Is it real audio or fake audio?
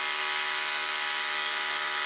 fake